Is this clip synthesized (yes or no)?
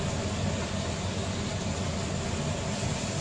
no